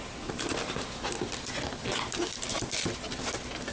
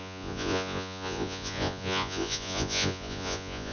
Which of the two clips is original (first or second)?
first